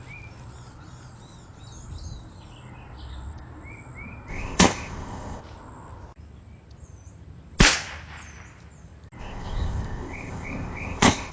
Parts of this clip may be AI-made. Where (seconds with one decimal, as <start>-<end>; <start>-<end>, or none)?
4.3-5.4; 9.2-11.3